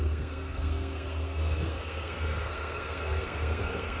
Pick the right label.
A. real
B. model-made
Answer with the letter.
B